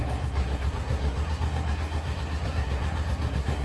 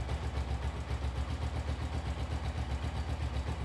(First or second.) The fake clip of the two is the first